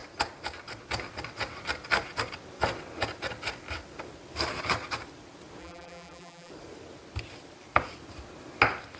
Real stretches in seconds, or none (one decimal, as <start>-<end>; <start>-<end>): 0.0-5.6; 6.5-9.0